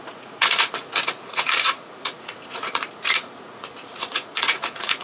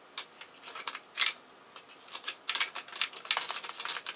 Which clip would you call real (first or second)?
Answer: second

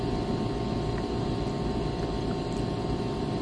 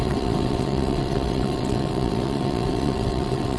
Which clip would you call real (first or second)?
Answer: first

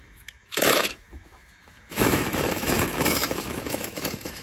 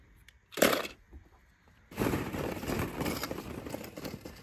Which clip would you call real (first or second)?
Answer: second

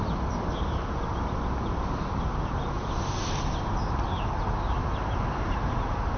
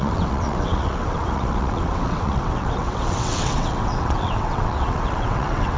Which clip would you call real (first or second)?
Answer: first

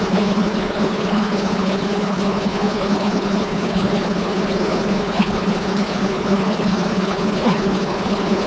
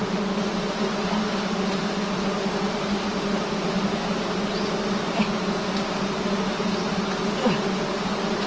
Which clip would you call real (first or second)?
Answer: second